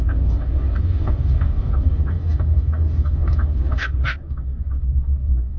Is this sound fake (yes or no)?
yes